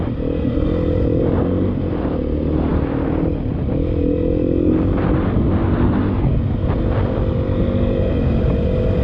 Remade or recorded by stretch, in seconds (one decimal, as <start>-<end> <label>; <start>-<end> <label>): 0.0-9.0 recorded